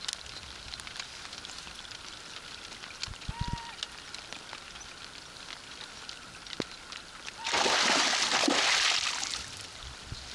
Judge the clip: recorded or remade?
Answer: recorded